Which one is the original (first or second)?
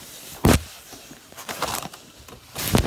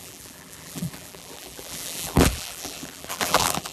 first